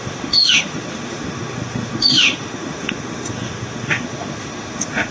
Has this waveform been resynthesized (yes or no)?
yes